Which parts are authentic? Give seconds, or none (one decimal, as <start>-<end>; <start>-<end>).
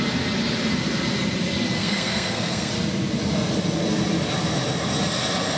0.0-1.8; 2.7-5.6